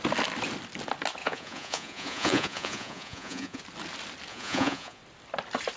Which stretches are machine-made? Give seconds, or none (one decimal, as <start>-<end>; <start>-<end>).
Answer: 1.2-3.6; 4.3-5.0